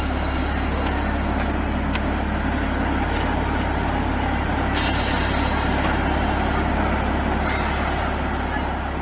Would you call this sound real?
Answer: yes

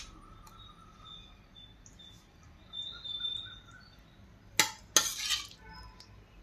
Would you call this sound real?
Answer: yes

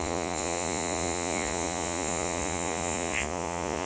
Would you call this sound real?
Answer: no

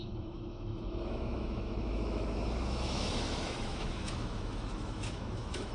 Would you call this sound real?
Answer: no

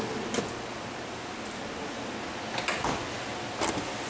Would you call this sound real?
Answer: yes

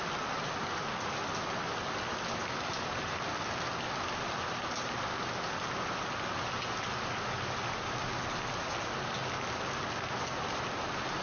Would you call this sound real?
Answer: yes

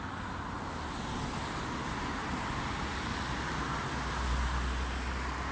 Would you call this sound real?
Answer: yes